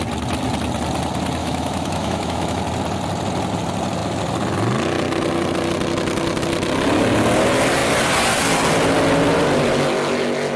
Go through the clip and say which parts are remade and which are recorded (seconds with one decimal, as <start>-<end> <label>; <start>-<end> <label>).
0.0-1.4 recorded; 1.4-2.6 remade; 2.6-10.6 recorded